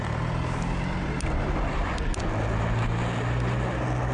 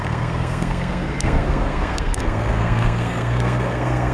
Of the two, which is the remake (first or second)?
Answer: second